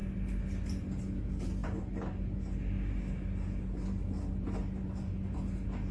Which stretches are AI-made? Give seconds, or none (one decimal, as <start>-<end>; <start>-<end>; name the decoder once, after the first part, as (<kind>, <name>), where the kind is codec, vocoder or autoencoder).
none